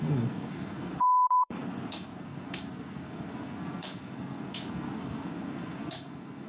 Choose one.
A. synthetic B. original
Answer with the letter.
A